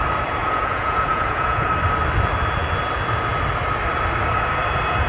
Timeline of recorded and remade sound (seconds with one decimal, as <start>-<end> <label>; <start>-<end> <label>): 0.0-0.4 recorded; 0.4-1.7 remade; 1.7-5.1 recorded